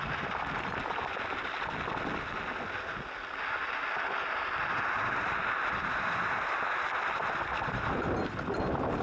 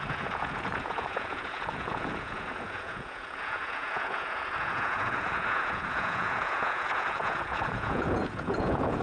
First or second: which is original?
first